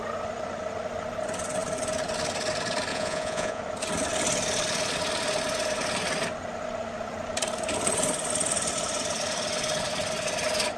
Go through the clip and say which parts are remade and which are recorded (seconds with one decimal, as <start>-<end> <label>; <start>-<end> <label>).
0.0-2.9 recorded; 2.9-3.6 remade; 3.6-10.8 recorded